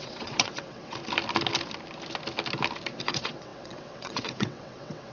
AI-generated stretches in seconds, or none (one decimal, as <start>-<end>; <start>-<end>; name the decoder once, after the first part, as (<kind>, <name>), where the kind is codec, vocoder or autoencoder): 0.0-1.0 (vocoder, WaveNeXt); 3.0-5.1